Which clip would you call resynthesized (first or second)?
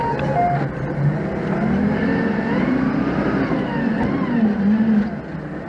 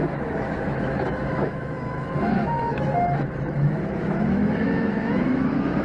second